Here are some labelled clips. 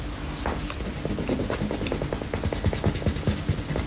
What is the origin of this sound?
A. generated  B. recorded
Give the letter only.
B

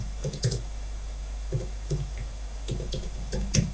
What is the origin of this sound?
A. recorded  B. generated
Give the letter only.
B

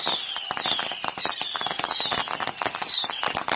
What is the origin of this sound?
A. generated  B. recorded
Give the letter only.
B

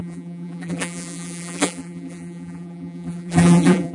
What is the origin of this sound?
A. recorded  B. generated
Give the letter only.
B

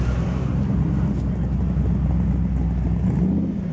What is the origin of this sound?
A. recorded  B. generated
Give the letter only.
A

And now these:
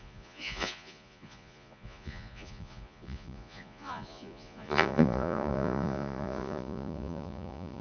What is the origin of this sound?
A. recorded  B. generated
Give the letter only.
B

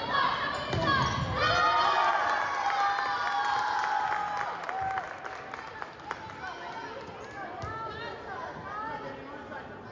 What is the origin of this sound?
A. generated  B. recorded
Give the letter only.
B